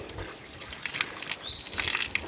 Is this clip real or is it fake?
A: real